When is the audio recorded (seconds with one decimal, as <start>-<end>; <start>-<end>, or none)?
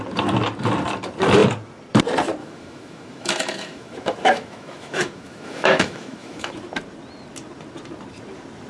0.0-2.4; 6.5-8.7